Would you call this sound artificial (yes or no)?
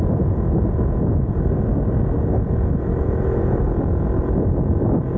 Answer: no